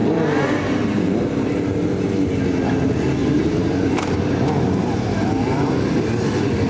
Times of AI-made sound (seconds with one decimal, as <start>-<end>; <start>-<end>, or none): 0.0-1.5; 3.2-5.8